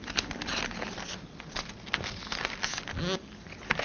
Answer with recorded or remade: recorded